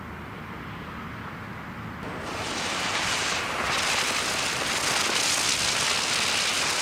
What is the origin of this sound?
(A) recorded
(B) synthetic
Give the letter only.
A